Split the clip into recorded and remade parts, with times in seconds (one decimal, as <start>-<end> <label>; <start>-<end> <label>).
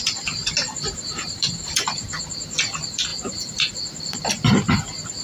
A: 0.0-0.4 recorded; 0.4-2.3 remade; 2.3-3.1 recorded; 3.1-3.7 remade; 3.7-5.2 recorded